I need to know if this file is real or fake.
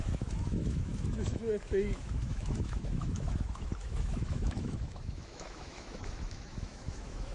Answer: fake